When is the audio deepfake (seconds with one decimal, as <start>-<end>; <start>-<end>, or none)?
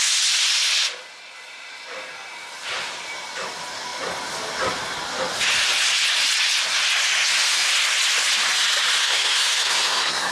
9.0-10.3